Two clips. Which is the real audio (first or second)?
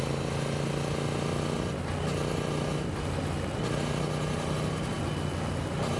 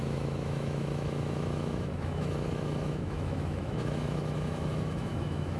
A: first